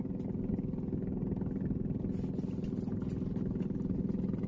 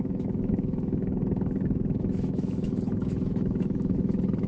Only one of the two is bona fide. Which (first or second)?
first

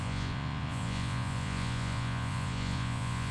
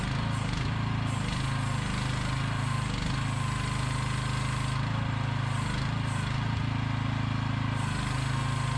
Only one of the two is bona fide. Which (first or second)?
second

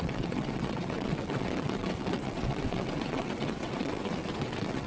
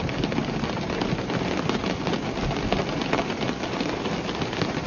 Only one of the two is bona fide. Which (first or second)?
second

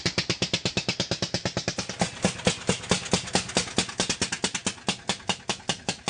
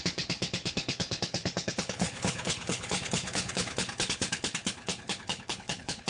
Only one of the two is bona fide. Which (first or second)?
first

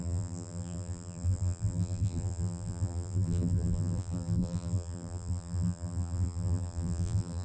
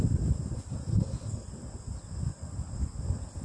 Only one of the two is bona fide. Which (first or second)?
second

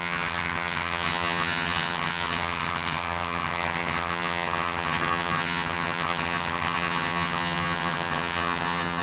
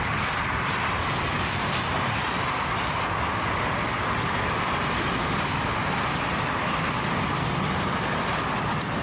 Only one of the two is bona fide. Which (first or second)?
second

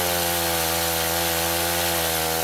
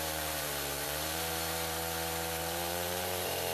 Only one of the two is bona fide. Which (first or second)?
first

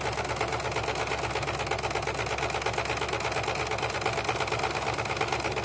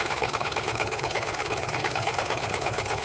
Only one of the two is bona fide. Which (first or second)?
first